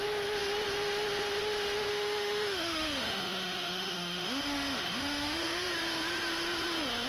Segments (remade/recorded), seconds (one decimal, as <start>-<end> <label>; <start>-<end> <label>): 0.0-1.9 recorded; 1.9-5.7 remade; 5.7-7.1 recorded